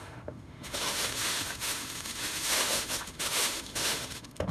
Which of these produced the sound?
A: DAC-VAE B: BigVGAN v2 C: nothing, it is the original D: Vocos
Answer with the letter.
A